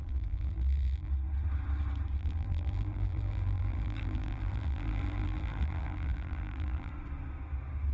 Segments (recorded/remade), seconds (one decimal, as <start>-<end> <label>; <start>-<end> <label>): 0.0-1.1 remade; 1.1-2.2 recorded; 2.2-6.9 remade; 6.9-7.9 recorded